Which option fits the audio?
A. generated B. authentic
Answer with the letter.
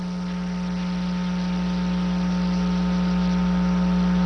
B